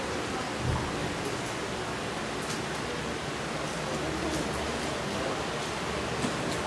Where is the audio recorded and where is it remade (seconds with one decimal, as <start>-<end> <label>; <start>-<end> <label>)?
0.0-6.7 recorded